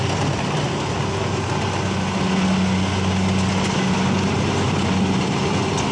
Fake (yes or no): no